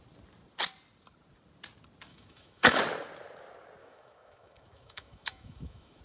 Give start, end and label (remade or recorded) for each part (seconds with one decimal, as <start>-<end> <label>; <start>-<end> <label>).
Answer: 0.0-2.1 recorded; 2.1-2.8 remade; 2.8-3.8 recorded; 3.8-6.0 remade